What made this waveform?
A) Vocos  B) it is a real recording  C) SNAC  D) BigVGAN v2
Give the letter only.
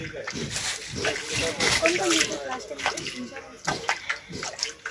B